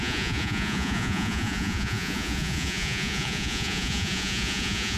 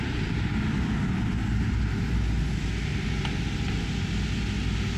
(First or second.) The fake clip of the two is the first